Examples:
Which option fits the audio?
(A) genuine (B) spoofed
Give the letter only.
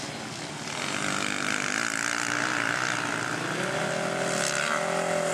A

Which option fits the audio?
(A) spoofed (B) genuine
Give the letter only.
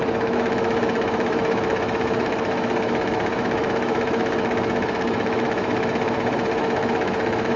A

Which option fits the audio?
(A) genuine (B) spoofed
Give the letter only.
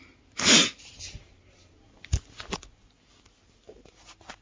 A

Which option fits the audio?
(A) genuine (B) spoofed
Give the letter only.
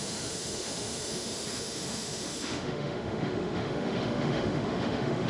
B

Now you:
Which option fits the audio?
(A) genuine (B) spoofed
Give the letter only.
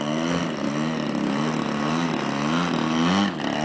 A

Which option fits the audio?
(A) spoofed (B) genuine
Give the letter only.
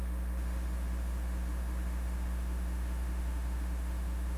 A